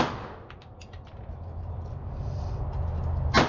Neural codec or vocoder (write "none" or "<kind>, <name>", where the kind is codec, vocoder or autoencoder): none